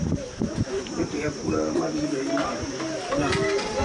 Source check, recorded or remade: remade